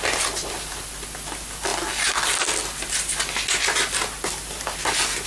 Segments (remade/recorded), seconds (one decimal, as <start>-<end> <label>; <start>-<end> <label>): 0.0-5.3 recorded